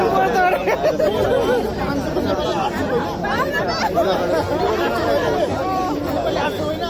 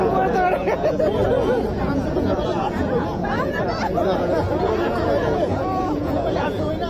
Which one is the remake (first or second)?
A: second